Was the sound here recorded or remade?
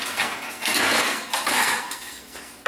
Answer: remade